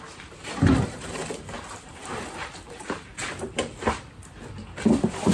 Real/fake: real